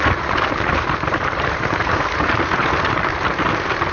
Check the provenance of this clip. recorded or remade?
remade